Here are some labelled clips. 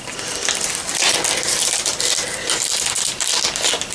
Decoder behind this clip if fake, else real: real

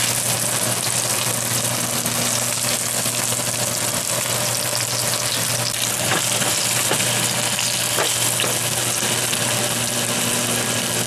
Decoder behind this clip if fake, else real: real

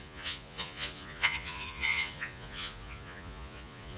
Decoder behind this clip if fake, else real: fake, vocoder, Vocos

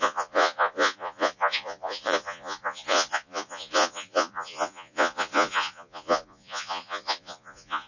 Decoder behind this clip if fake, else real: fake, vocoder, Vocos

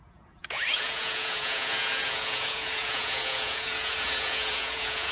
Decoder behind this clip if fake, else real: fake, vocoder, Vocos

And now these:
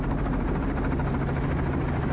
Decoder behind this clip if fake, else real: real